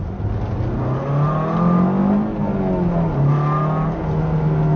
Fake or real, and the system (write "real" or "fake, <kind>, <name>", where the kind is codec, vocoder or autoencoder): real